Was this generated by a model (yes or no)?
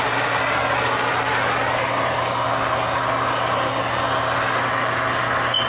no